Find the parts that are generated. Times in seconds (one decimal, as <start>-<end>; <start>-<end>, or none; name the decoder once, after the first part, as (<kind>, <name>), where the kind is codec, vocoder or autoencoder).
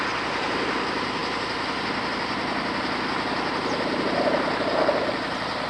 none